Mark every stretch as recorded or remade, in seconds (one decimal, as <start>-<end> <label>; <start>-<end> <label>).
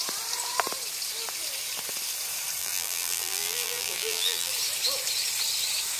0.0-2.6 recorded; 2.6-4.5 remade; 4.5-6.0 recorded